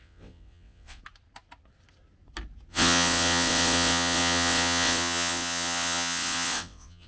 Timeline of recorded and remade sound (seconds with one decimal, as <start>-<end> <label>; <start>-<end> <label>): 0.0-1.0 remade; 1.0-2.7 recorded; 2.7-7.1 remade